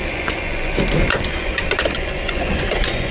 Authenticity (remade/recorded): remade